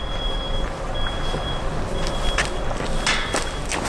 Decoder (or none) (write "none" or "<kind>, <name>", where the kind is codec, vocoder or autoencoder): none